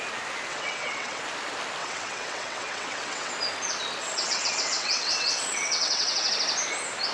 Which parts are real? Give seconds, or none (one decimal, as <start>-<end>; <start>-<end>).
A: 0.0-0.5; 1.2-1.8; 3.3-4.0; 6.3-7.1